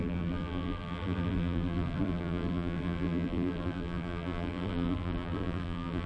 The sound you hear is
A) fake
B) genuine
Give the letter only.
A